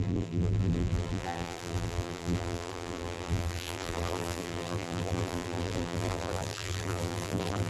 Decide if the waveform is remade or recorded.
remade